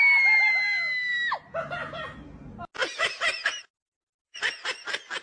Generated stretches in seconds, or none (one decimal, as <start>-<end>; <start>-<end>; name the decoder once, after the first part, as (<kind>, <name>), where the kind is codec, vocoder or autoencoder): 2.8-3.7 (vocoder, BigVGAN v2)